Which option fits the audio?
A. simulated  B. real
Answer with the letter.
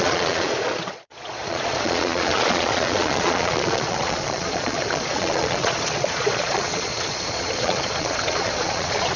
A